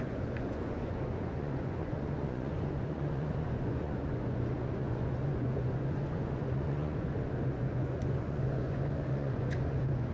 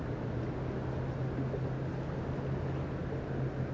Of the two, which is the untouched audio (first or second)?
second